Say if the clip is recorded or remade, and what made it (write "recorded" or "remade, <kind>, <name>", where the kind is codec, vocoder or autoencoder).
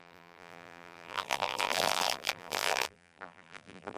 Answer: remade, vocoder, BigVGAN v2